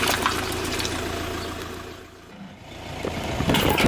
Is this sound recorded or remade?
recorded